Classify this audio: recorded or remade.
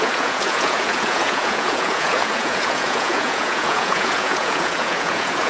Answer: remade